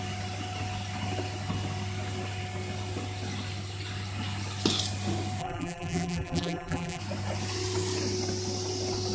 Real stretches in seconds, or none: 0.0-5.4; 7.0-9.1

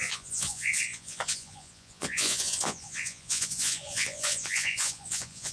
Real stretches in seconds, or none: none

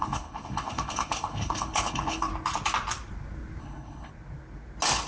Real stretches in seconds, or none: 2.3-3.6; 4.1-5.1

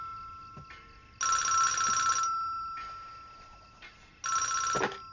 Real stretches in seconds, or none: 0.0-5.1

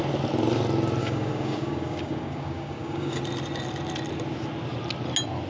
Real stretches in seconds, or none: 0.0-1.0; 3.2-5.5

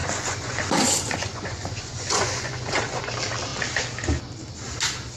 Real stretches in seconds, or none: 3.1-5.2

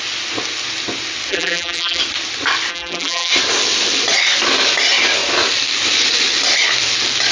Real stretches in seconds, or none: 0.0-1.3; 2.0-2.7; 3.3-7.3